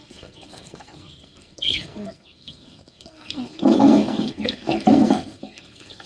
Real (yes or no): no